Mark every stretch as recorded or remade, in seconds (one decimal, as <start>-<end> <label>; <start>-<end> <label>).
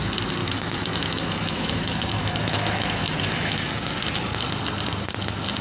0.0-0.4 recorded; 0.4-3.8 remade; 3.8-5.6 recorded